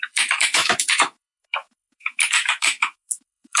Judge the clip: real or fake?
fake